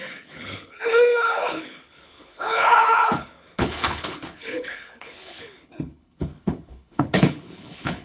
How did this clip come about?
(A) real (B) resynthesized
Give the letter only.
B